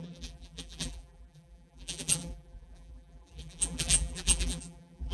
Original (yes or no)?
no